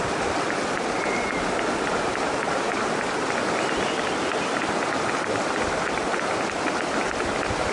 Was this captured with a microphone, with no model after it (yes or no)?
yes